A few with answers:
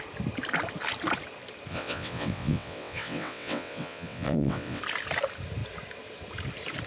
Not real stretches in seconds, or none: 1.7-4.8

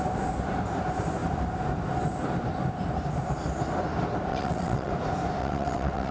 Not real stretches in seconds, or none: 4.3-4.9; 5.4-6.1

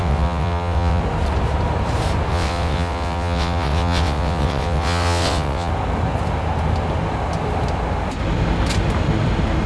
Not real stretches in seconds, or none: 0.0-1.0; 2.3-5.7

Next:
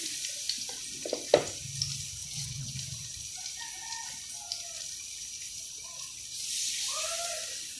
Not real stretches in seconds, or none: 2.2-2.7